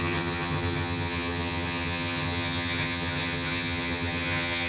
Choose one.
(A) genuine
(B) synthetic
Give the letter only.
B